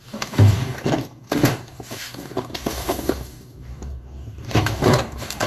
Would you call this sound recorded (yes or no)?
no